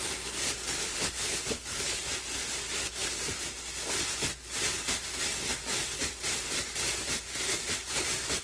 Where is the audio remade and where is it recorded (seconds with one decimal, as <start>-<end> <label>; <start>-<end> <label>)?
0.0-0.8 recorded; 0.8-2.0 remade; 2.0-8.4 recorded